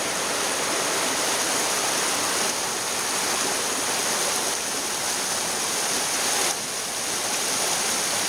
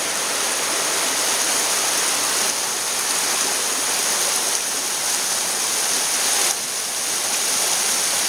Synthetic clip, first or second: first